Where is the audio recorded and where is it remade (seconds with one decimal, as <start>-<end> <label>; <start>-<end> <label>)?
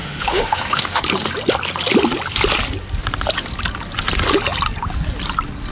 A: 0.0-1.0 remade; 1.0-5.7 recorded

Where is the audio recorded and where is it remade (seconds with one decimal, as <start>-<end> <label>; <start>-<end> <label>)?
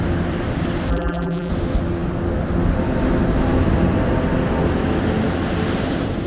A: 0.0-0.9 recorded; 0.9-1.5 remade; 1.5-6.3 recorded